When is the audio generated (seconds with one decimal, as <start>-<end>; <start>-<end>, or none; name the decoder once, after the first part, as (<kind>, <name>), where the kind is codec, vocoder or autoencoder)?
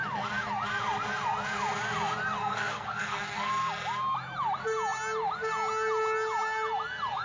2.4-3.5 (codec, SNAC)